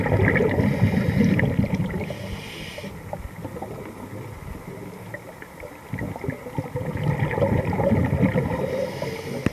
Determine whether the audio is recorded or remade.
recorded